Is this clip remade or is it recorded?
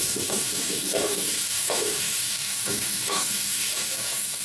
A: remade